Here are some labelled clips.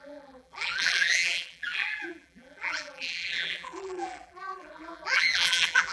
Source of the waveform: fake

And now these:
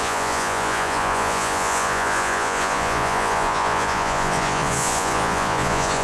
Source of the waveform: fake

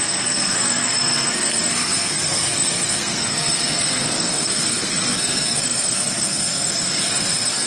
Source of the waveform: fake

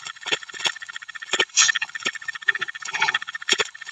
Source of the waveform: fake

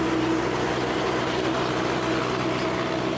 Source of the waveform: real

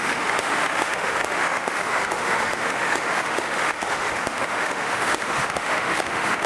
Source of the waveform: fake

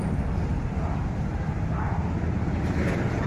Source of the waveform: real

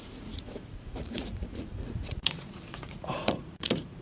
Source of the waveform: fake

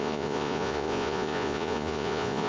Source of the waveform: fake